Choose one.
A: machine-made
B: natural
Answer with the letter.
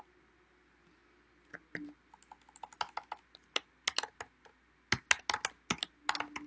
B